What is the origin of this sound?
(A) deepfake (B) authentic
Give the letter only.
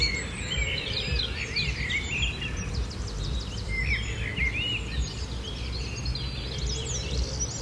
B